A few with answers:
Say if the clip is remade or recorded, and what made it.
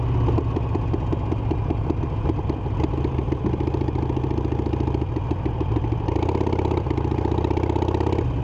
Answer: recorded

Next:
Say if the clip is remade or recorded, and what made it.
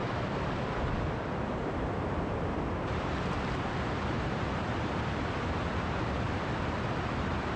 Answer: recorded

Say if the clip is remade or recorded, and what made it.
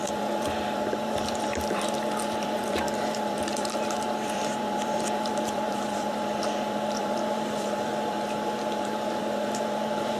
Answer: remade, vocoder, BigVGAN v2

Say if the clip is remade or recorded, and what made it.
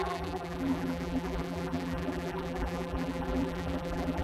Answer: remade, vocoder, BigVGAN v2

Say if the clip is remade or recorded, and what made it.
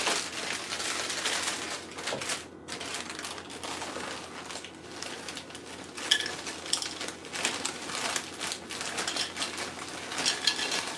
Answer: recorded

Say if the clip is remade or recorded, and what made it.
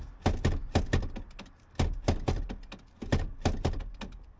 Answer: recorded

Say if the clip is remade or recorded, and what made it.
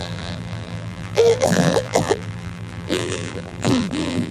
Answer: remade, vocoder, BigVGAN v2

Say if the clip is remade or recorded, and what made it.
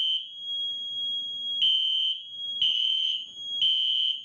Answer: recorded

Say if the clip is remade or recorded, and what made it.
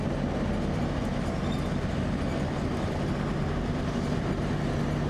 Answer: recorded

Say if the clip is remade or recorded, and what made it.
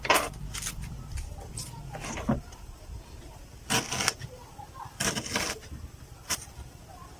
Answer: recorded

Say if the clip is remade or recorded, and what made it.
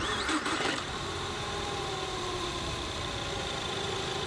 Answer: remade, vocoder, BigVGAN v2